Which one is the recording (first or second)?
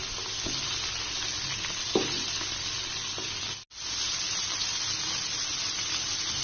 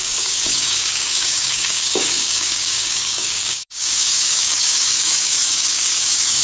first